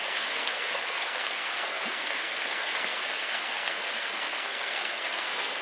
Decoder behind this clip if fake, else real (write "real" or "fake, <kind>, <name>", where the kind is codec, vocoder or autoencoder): fake, codec, SNAC